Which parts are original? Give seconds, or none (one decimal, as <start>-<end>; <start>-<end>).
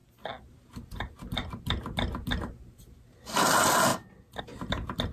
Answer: 0.0-5.1